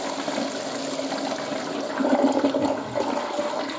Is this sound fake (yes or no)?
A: no